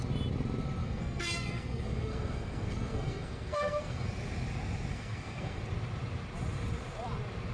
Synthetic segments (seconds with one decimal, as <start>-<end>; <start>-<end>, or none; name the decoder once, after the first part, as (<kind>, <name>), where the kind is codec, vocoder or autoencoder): 0.8-4.1 (codec, SNAC); 4.9-5.6